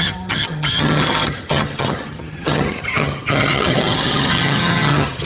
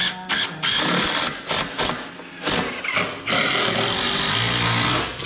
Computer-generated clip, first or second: first